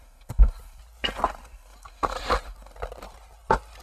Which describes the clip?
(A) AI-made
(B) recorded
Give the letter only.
B